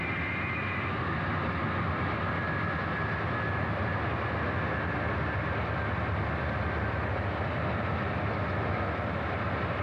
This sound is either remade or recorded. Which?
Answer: recorded